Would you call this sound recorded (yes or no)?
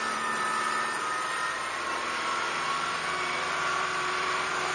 no